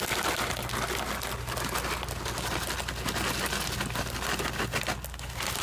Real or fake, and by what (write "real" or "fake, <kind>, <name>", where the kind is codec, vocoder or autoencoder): real